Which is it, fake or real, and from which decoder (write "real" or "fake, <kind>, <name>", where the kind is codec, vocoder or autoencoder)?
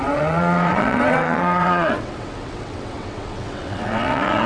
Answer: fake, vocoder, WaveNeXt